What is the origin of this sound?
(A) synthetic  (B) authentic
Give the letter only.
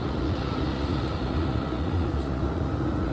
A